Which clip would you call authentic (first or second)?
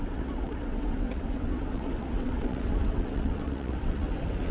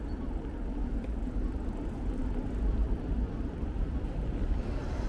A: second